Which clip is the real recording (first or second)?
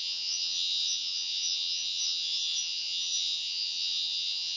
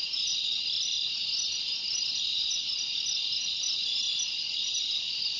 second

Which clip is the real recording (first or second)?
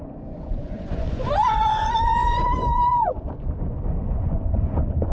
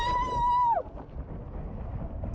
second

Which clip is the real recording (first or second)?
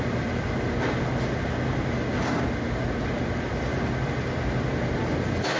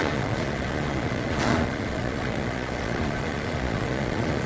first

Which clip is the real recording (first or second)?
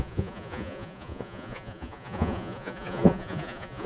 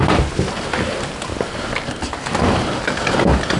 second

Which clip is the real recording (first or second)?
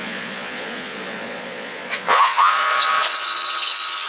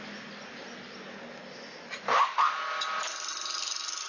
second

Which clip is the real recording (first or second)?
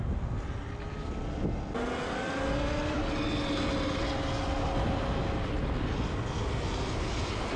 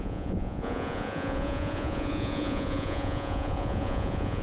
first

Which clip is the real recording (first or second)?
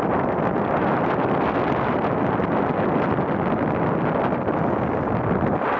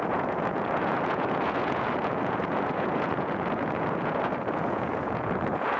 first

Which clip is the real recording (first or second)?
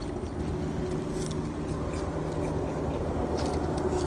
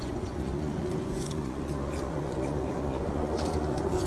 first